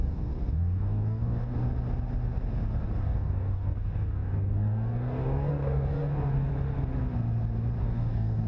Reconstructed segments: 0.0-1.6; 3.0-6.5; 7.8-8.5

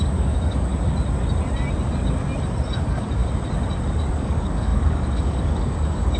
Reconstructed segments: 0.0-0.7; 2.8-3.2; 4.1-6.2